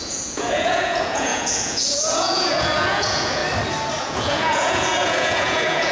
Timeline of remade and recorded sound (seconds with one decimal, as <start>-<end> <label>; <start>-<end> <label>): 0.0-3.4 remade; 3.4-4.0 recorded; 4.0-5.9 remade